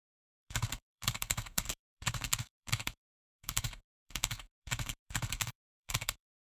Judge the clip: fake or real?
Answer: fake